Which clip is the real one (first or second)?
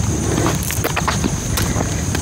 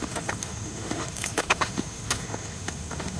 first